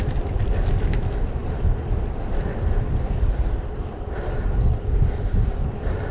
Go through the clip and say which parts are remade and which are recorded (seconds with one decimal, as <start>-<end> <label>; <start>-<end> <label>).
0.0-6.1 recorded